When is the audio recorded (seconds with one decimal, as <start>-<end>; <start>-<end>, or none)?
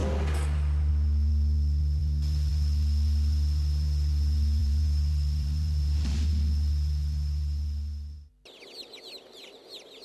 0.0-4.6; 6.3-10.0